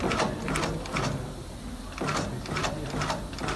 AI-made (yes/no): no